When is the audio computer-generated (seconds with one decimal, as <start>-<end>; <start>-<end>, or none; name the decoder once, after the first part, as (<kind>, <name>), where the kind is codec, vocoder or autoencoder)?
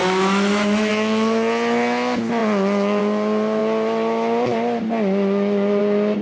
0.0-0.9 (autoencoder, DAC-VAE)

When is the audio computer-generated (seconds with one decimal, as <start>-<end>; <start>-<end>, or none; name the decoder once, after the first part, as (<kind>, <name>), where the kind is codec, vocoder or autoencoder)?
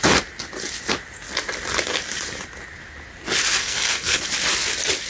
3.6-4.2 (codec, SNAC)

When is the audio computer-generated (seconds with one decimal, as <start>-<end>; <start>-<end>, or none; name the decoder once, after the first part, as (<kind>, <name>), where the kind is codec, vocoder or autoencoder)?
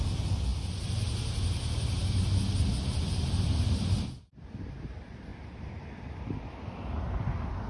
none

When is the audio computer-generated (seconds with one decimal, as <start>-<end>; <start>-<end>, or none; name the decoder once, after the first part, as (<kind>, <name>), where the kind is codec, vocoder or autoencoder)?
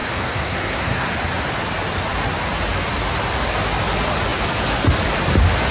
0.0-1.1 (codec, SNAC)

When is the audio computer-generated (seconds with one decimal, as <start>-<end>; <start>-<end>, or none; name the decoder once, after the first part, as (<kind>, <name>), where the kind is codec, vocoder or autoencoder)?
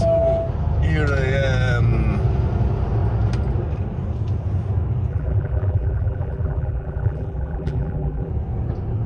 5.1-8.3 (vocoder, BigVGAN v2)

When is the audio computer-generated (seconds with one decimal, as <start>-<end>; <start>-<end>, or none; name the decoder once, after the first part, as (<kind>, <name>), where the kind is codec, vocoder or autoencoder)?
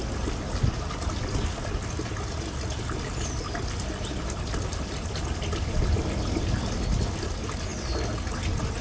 none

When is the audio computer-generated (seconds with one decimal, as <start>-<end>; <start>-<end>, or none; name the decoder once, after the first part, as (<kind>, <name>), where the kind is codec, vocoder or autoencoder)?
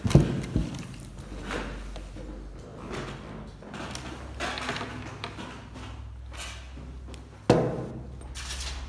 none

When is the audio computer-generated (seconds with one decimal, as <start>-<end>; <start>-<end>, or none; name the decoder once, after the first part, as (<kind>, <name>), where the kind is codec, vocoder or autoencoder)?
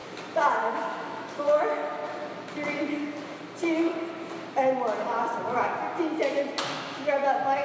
0.6-2.0 (autoencoder, DAC-VAE); 6.6-7.6